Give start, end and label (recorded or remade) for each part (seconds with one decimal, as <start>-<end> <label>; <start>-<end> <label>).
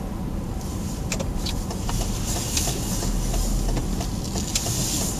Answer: 0.0-0.7 recorded; 0.7-1.9 remade; 1.9-5.2 recorded